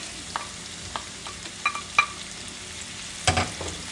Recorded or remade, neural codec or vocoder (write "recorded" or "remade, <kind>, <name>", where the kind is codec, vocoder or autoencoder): recorded